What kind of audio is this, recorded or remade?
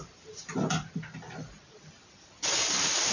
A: recorded